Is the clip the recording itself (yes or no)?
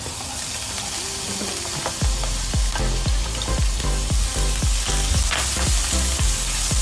yes